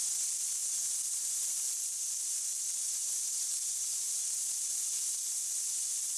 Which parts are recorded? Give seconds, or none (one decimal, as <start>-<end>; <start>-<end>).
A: 0.0-0.6; 1.7-3.0; 4.4-6.2